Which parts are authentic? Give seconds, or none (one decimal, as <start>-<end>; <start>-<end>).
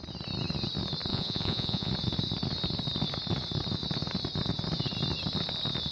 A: 0.0-1.1; 1.9-5.9